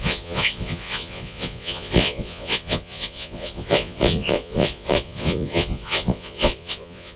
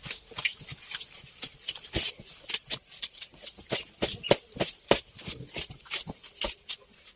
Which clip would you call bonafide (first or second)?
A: second